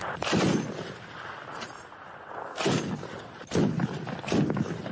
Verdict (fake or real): real